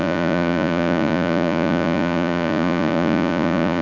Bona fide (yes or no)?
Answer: no